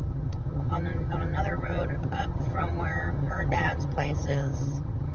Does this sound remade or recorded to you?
remade